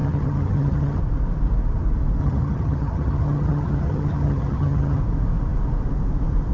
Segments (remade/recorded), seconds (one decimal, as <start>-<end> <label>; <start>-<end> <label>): 0.0-1.0 remade; 1.0-2.2 recorded; 2.2-5.0 remade; 5.0-6.5 recorded

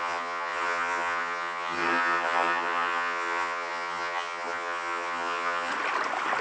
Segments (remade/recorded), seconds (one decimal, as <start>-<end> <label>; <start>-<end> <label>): 0.0-5.7 remade; 5.7-6.4 recorded